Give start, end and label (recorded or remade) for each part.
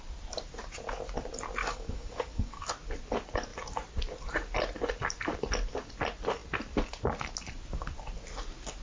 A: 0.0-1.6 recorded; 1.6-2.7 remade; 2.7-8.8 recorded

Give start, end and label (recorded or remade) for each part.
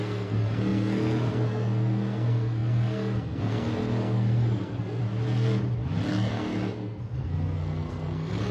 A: 0.0-5.0 remade; 5.0-6.1 recorded; 6.1-8.5 remade